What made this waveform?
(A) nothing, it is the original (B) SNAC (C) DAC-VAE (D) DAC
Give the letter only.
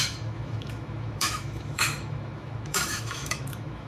C